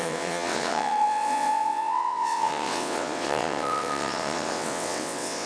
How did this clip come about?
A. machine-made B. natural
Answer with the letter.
A